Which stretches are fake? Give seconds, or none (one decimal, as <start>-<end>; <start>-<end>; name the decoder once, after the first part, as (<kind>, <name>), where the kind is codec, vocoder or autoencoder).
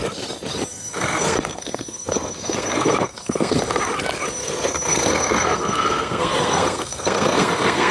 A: 0.7-3.6 (codec, SNAC); 4.4-7.9